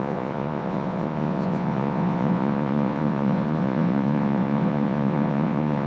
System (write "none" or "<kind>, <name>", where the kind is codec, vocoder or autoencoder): vocoder, Vocos